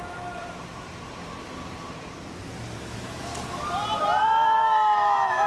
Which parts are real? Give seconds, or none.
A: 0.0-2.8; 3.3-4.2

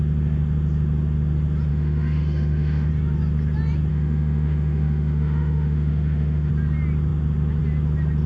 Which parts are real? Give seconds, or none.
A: 0.0-1.7; 2.9-3.9; 6.5-8.3

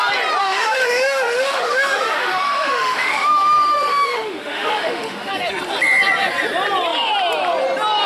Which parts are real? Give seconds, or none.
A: 0.0-0.4; 5.3-8.1

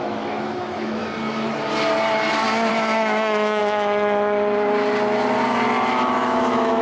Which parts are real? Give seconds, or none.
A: 1.0-2.7; 3.6-5.9

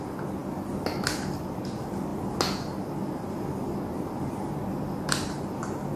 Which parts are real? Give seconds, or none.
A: 0.0-6.0

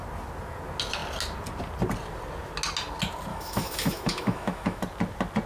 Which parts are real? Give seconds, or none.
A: 0.0-3.3; 4.8-5.5